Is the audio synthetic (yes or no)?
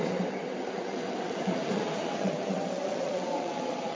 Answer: yes